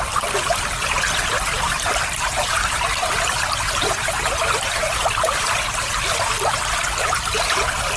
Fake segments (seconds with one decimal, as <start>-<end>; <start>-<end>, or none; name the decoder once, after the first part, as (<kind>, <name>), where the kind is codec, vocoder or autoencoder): 1.5-6.3 (vocoder, BigVGAN v2)